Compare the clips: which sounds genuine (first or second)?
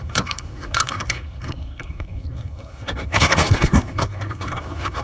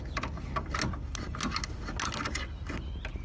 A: second